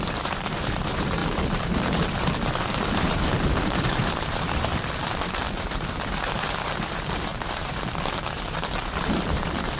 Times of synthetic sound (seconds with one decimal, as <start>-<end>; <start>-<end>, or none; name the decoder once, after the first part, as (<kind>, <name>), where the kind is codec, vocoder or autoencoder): 0.0-4.7 (vocoder, BigVGAN v2); 5.6-9.8